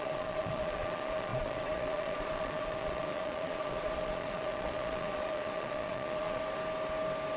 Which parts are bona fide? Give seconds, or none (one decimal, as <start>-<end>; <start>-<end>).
6.4-7.4